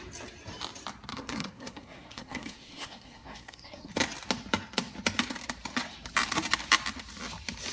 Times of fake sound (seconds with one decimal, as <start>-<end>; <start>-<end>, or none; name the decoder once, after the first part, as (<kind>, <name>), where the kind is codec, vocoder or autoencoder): 1.1-3.9 (codec, SNAC)